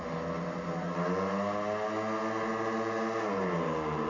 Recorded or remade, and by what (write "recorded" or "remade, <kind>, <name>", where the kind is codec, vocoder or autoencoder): recorded